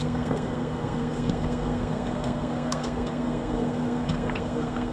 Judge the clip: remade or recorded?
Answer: remade